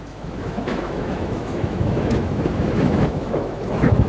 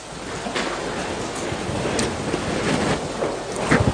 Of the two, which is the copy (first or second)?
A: first